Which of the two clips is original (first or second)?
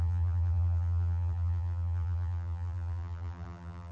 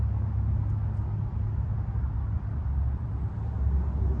second